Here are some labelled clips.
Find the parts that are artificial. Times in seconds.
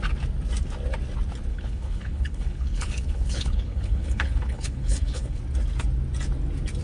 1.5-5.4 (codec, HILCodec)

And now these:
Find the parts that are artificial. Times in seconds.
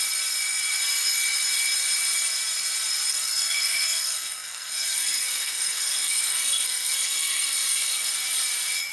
3.1-8.1 (codec, SNAC)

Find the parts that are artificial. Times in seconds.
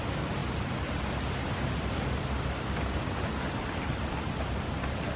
none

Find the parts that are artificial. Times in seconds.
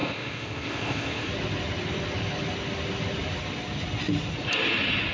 0.0-1.3 (codec, ZipCodec)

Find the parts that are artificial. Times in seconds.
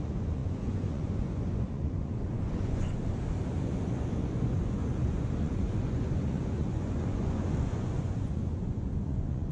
0.0-3.0 (vocoder, Vocos); 3.6-9.5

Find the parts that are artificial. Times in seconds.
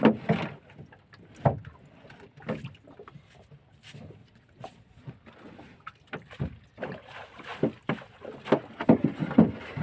4.2-5.1 (vocoder, Vocos)